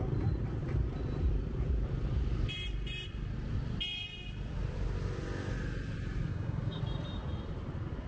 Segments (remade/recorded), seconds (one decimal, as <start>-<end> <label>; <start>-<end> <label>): 0.0-6.3 recorded; 6.3-6.8 remade; 6.8-8.1 recorded

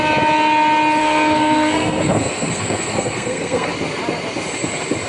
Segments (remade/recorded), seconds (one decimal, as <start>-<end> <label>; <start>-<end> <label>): 0.0-1.0 recorded; 1.0-3.7 remade; 3.7-5.1 recorded

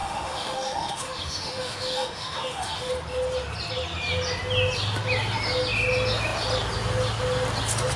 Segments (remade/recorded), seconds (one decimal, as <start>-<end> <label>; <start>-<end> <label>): 0.0-2.9 remade; 2.9-8.0 recorded

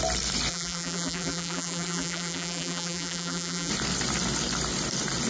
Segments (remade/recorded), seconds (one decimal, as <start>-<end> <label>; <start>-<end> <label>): 0.0-0.5 recorded; 0.5-3.7 remade; 3.7-5.3 recorded

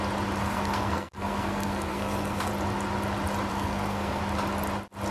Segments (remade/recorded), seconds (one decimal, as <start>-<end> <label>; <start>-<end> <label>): 0.0-0.4 recorded; 0.4-2.5 remade; 2.5-3.5 recorded; 3.5-4.2 remade; 4.2-5.1 recorded

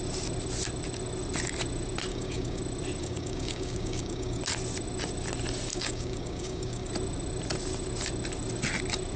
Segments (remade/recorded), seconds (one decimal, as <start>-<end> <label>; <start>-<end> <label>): 0.0-2.1 recorded; 2.1-2.6 remade; 2.6-3.0 recorded; 3.0-4.4 remade; 4.4-5.7 recorded; 5.7-6.9 remade; 6.9-9.2 recorded